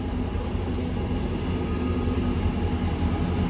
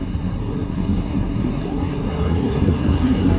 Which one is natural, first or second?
first